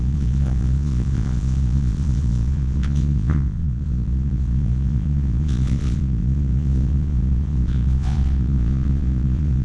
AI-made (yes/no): yes